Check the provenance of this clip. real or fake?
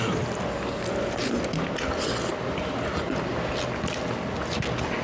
real